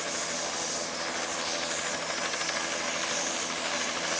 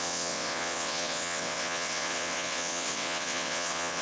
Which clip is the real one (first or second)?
first